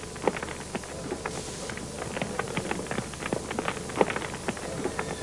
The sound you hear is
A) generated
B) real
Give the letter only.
B